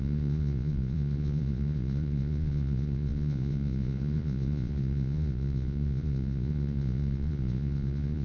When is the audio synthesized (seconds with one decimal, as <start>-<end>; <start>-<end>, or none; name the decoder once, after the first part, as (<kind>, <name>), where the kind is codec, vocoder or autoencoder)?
0.0-8.2 (vocoder, Vocos)